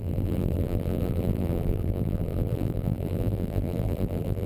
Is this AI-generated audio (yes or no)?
yes